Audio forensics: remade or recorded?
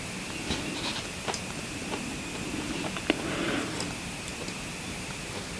recorded